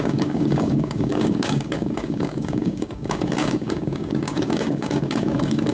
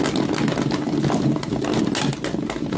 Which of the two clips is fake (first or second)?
first